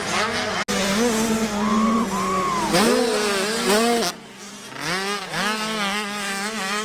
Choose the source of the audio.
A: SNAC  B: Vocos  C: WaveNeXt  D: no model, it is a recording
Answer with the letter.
D